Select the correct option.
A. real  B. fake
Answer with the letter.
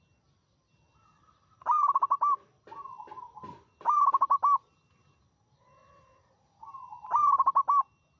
A